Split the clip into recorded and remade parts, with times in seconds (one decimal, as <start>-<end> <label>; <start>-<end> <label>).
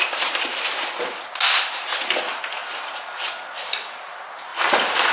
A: 0.0-5.1 recorded